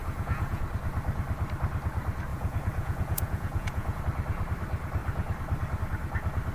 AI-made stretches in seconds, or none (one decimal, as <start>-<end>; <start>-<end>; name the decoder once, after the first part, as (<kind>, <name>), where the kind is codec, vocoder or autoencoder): 0.0-0.6 (vocoder, Vocos); 2.3-4.0